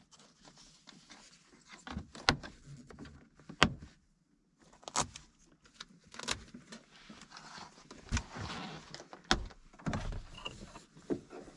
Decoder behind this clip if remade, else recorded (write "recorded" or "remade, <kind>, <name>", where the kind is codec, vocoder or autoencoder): recorded